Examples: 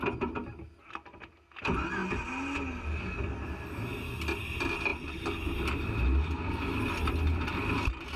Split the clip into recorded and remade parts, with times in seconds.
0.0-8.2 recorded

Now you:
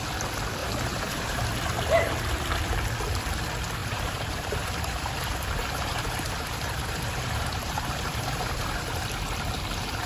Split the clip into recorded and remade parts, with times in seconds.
0.0-0.6 recorded; 0.6-1.4 remade; 1.4-3.8 recorded; 3.8-8.8 remade; 8.8-10.1 recorded

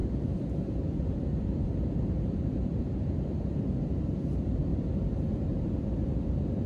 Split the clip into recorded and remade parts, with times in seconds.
0.0-6.7 remade